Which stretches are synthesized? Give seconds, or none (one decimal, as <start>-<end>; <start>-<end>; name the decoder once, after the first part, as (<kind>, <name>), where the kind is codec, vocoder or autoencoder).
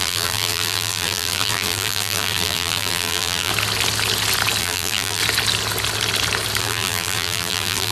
0.0-3.5 (vocoder, BigVGAN v2); 4.6-5.2; 6.6-7.9